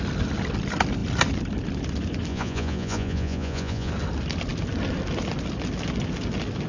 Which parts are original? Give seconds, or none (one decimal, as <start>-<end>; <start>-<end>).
0.0-2.3; 3.9-6.7